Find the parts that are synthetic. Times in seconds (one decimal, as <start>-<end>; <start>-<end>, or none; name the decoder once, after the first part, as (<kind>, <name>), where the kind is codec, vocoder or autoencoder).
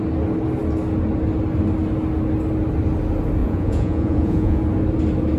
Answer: 3.4-4.6 (vocoder, Vocos)